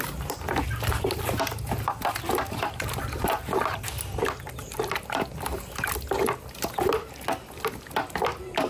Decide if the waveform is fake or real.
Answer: real